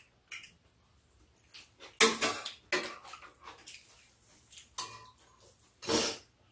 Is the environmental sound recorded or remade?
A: recorded